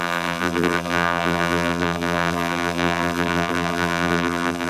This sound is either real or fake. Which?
fake